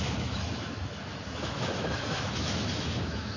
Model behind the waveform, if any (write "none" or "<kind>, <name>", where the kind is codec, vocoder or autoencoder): autoencoder, DAC-VAE